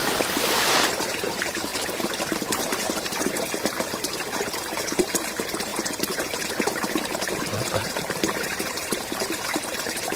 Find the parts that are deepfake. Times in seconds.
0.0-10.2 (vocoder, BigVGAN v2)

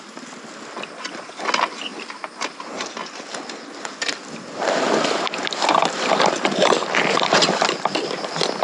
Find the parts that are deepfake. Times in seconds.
1.9-2.9 (vocoder, BigVGAN v2)

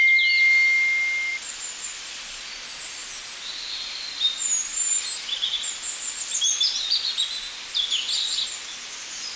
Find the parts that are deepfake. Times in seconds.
1.3-2.4 (vocoder, BigVGAN v2); 4.7-7.2

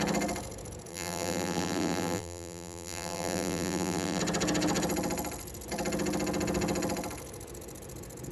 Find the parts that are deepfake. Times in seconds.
0.9-4.2 (vocoder, BigVGAN v2)

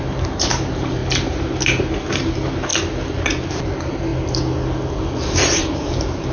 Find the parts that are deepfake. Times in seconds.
0.0-1.0 (vocoder, BigVGAN v2); 2.1-2.7; 3.5-4.1; 4.9-6.3